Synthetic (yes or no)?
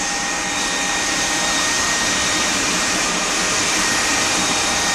yes